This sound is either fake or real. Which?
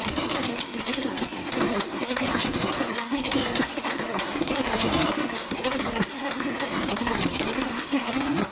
fake